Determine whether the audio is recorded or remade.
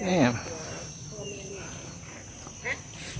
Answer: recorded